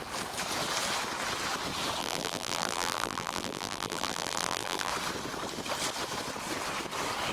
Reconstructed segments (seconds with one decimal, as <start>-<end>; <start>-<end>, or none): 2.0-4.9